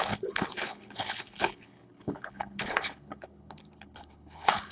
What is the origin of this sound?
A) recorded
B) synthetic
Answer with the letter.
B